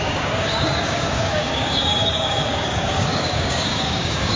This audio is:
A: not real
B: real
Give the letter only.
A